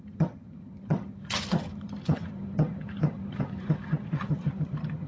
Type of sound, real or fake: fake